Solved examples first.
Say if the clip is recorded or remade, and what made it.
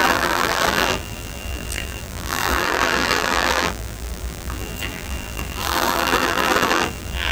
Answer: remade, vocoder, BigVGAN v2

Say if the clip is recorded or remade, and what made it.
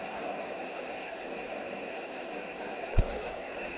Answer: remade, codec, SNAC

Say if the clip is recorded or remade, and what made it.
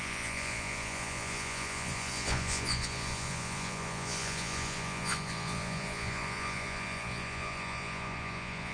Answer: remade, vocoder, Vocos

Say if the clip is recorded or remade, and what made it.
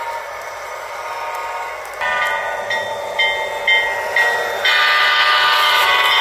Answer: recorded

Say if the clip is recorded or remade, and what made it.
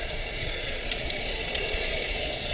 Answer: remade, vocoder, Vocos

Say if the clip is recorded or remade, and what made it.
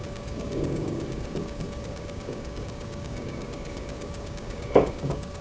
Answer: remade, codec, DAC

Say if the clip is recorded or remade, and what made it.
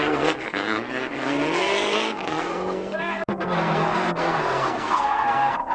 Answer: remade, codec, SNAC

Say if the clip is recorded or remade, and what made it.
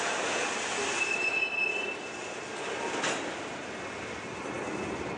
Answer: recorded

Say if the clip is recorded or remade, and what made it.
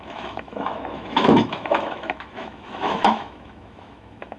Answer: remade, autoencoder, DAC-VAE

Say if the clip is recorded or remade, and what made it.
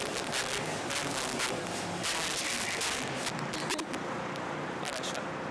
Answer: recorded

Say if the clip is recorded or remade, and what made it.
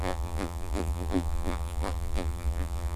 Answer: remade, vocoder, BigVGAN v2